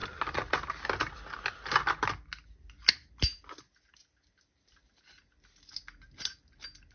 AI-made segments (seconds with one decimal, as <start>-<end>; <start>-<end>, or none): none